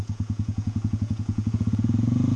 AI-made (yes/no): yes